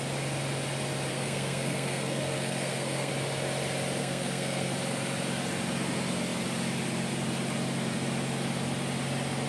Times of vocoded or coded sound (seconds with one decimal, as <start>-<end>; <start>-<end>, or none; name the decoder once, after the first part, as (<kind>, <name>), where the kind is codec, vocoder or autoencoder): 1.1-3.1 (codec, SNAC); 4.0-4.7